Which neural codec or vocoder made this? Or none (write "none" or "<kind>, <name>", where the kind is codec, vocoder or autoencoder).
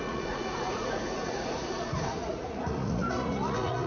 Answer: vocoder, Vocos